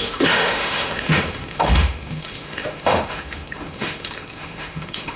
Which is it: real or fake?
fake